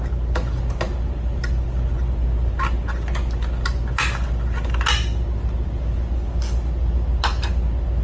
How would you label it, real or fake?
real